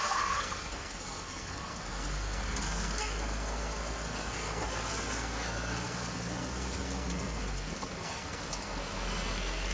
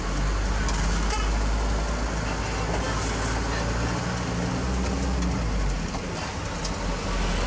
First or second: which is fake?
first